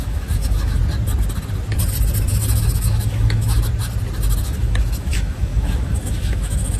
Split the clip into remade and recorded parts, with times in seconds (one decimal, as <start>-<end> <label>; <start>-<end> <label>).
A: 0.0-0.8 remade; 0.8-2.3 recorded; 2.3-3.7 remade; 3.7-4.4 recorded; 4.4-6.8 remade